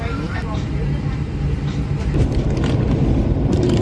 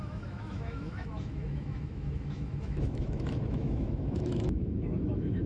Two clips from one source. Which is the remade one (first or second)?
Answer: second